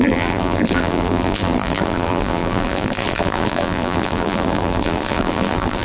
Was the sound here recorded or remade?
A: remade